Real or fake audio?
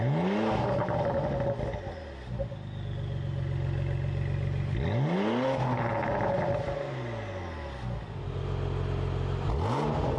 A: real